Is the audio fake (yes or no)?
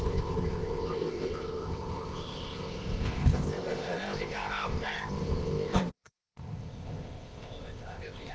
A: yes